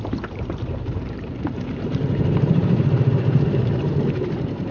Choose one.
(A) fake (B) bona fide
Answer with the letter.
A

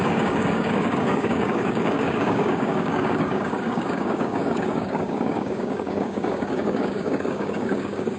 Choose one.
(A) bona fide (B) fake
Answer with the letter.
B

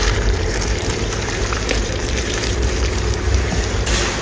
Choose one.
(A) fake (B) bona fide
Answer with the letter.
A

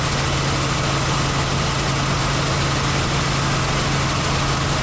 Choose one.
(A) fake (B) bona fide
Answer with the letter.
B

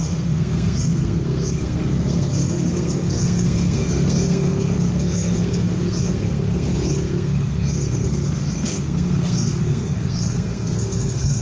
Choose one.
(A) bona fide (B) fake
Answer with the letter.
B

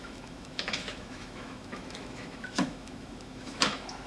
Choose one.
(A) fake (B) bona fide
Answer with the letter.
A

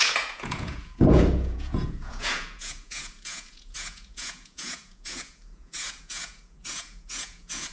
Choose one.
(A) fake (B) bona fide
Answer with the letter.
A